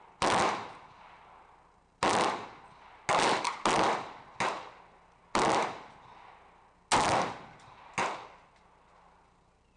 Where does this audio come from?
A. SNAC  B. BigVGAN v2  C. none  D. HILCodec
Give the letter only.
C